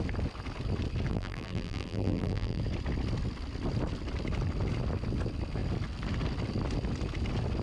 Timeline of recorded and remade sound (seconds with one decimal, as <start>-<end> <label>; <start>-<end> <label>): 0.0-1.1 recorded; 1.1-2.6 remade; 2.6-7.6 recorded